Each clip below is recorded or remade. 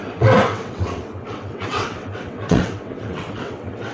remade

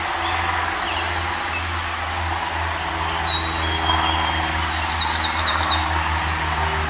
recorded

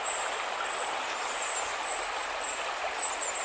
recorded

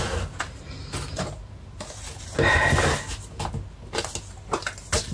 recorded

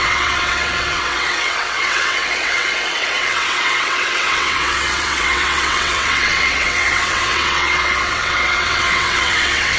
remade